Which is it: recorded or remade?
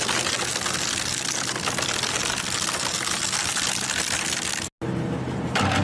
recorded